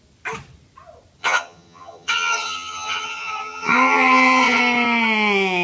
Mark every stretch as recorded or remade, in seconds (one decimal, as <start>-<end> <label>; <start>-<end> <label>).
0.0-1.2 recorded; 1.2-4.6 remade; 4.6-5.6 recorded